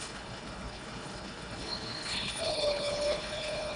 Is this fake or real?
fake